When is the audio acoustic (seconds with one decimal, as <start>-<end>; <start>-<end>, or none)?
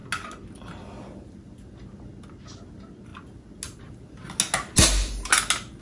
0.0-5.8